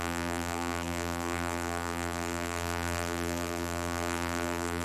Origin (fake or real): fake